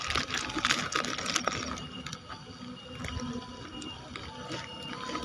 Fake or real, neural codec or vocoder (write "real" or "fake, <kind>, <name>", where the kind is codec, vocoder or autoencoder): real